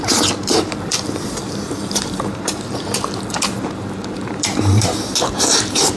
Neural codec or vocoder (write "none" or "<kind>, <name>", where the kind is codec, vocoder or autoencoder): vocoder, BigVGAN v2